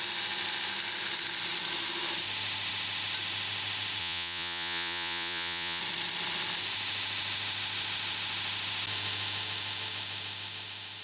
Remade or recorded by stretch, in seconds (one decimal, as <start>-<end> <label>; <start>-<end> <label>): 0.0-4.0 recorded; 4.0-5.8 remade; 5.8-11.0 recorded